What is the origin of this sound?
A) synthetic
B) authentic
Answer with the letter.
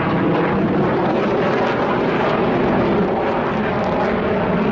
B